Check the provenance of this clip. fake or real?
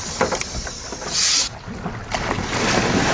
real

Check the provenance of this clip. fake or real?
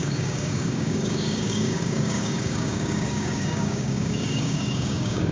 fake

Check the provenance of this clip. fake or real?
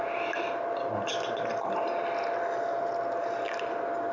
real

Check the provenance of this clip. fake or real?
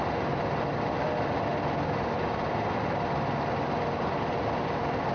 real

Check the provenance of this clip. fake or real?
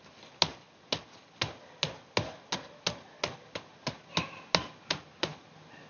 real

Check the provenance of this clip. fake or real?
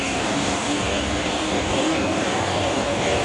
fake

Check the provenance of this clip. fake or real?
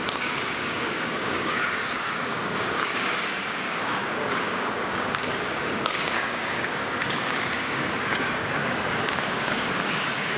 fake